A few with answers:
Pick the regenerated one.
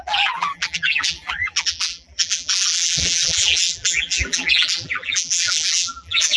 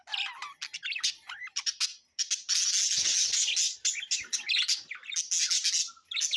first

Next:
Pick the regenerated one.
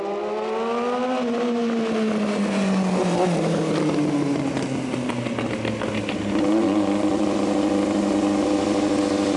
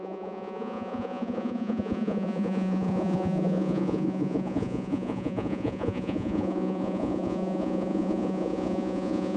second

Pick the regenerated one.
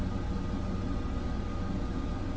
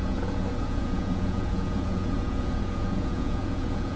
second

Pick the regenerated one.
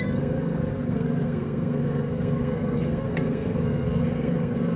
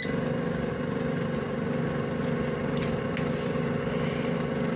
first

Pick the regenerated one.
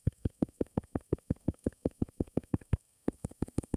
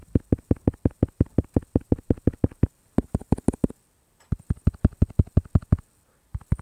first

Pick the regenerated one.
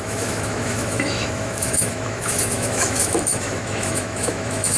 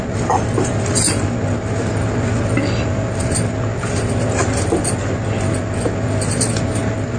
first